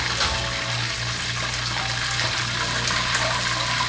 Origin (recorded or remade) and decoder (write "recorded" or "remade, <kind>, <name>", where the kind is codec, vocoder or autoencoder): recorded